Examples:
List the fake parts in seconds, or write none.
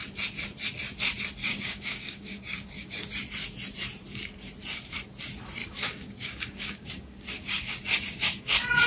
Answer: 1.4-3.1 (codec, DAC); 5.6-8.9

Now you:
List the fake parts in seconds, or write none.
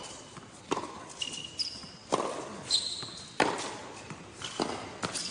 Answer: none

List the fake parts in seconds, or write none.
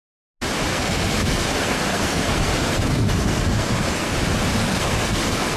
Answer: 0.7-4.1 (codec, SNAC); 4.6-5.6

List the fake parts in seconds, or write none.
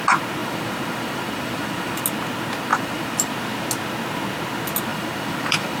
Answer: 0.4-2.0 (vocoder, BigVGAN v2); 2.7-3.3; 4.9-5.8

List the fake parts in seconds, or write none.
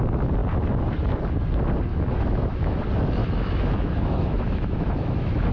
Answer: 1.9-2.8 (autoencoder, DAC-VAE); 3.2-5.5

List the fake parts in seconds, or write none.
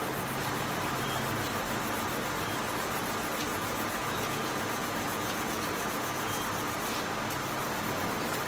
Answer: 3.5-6.4 (vocoder, Vocos)